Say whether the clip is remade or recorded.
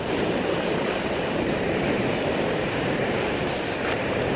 remade